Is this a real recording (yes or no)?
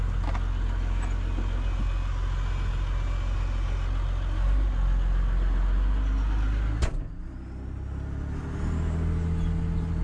yes